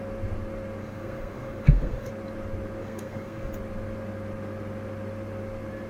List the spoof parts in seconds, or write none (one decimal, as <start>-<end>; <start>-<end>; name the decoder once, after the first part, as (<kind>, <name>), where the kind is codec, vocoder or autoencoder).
0.8-2.1 (codec, SNAC); 2.8-3.5